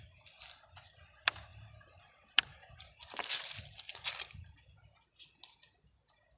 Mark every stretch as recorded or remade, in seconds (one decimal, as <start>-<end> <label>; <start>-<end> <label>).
0.0-6.4 recorded